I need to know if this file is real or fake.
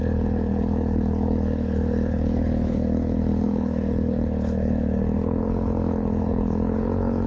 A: fake